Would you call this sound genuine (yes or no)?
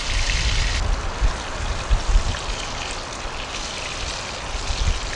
yes